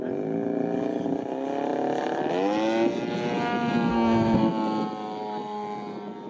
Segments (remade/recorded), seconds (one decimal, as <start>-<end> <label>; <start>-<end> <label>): 0.0-3.9 recorded; 3.9-4.5 remade; 4.5-6.3 recorded